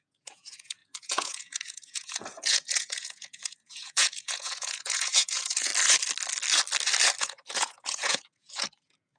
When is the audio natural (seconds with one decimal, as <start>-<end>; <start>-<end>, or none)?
5.7-7.2